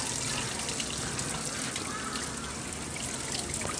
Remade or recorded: recorded